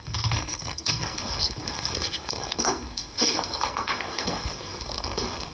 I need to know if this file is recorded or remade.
remade